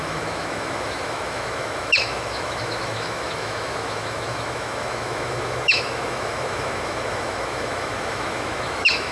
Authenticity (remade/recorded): remade